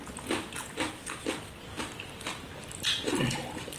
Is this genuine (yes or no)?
yes